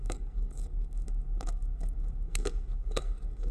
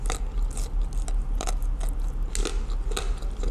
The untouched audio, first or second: second